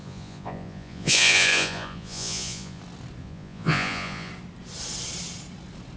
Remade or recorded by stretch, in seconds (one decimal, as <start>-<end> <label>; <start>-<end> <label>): 0.0-2.8 remade; 2.8-3.2 recorded; 3.2-4.3 remade; 4.3-6.0 recorded